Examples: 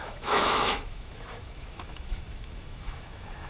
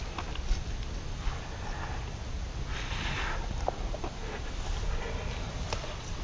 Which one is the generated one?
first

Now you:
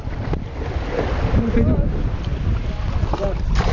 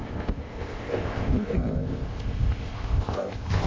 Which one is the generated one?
second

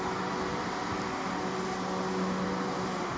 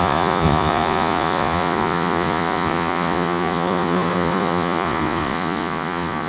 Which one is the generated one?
second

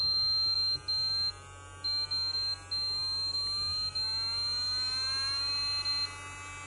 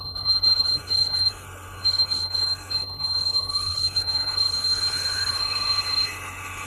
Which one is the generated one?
second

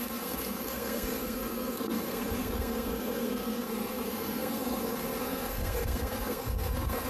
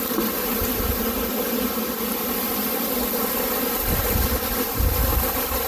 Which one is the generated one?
first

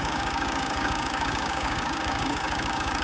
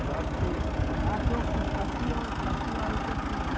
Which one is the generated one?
first